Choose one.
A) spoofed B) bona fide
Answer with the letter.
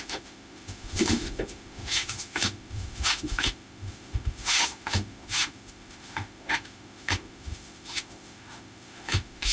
A